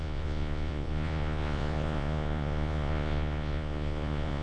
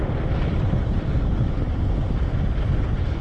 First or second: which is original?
second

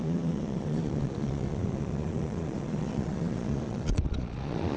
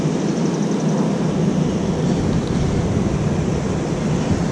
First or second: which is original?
second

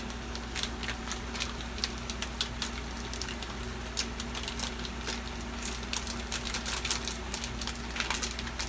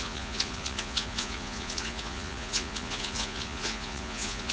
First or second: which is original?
first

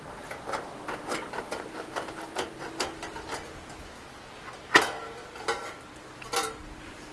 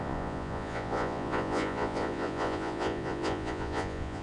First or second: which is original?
first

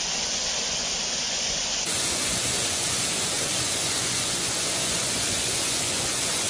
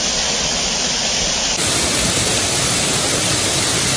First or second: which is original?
second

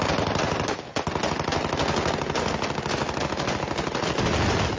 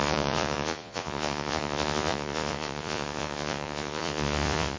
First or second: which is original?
first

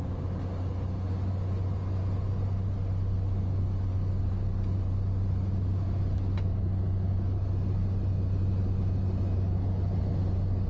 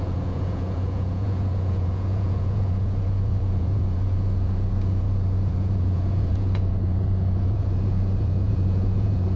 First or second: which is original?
first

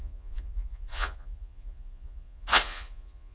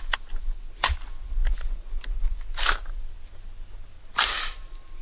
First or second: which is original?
second